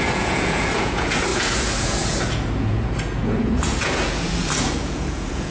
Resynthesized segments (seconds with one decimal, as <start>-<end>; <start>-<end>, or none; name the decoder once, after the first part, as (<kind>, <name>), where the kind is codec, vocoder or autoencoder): 0.0-5.5 (vocoder, Vocos)